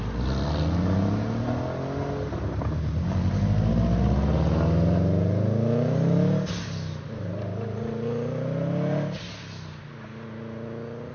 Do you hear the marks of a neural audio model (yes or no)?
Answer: no